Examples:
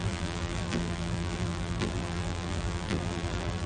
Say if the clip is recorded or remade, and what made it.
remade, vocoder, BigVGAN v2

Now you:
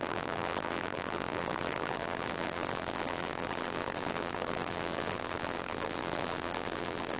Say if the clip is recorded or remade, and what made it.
remade, vocoder, BigVGAN v2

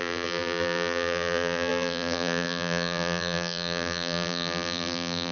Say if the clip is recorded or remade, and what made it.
remade, vocoder, BigVGAN v2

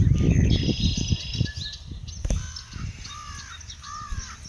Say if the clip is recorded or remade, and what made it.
recorded